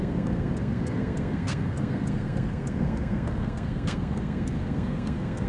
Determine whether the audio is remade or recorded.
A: remade